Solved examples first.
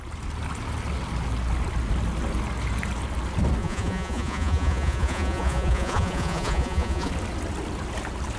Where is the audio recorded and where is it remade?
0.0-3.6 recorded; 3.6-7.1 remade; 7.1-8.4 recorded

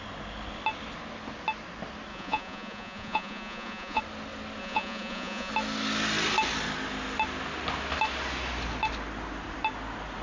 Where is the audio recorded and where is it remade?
0.0-2.1 recorded; 2.1-4.0 remade; 4.0-4.6 recorded; 4.6-5.5 remade; 5.5-10.2 recorded

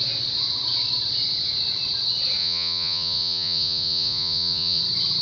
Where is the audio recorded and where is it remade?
0.0-2.4 recorded; 2.4-4.8 remade; 4.8-5.2 recorded

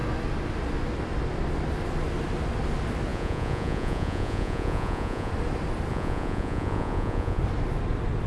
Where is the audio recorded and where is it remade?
0.0-3.1 recorded; 3.1-5.3 remade; 5.3-5.9 recorded; 5.9-7.4 remade; 7.4-8.3 recorded

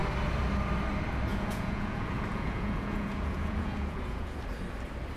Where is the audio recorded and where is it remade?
0.0-1.3 recorded; 1.3-4.4 remade; 4.4-5.2 recorded

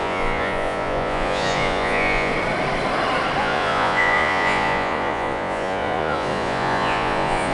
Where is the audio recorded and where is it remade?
0.0-2.3 remade; 2.3-3.4 recorded; 3.4-7.5 remade

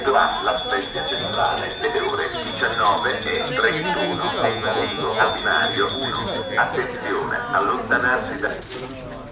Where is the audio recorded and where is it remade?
0.0-4.0 recorded; 4.0-5.3 remade; 5.3-9.3 recorded